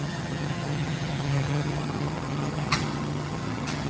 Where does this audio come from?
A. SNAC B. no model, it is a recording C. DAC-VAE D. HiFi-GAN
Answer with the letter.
D